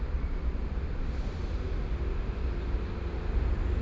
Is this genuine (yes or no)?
yes